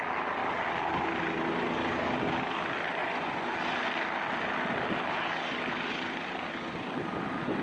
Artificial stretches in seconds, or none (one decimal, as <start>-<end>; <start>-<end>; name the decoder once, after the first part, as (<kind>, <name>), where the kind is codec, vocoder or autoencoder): 3.0-3.5 (vocoder, Vocos)